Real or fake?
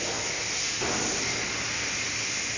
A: real